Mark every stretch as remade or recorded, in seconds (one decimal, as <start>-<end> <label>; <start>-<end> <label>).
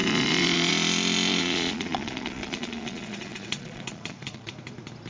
0.0-0.7 remade; 0.7-1.4 recorded; 1.4-4.5 remade; 4.5-5.1 recorded